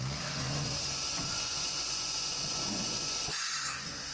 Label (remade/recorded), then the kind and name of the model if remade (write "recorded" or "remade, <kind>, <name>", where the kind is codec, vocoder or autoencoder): remade, vocoder, Vocos